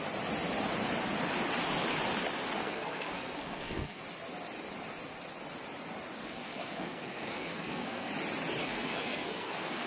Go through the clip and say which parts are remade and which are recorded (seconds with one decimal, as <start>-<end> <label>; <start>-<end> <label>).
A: 0.0-2.6 recorded; 2.6-4.0 remade; 4.0-6.2 recorded; 6.2-8.1 remade; 8.1-8.6 recorded; 8.6-9.9 remade